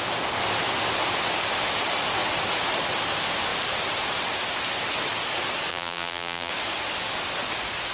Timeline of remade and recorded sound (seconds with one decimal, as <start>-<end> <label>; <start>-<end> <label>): 0.0-5.7 recorded; 5.7-6.5 remade; 6.5-7.9 recorded